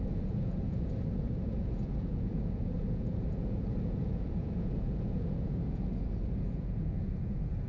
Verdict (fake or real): fake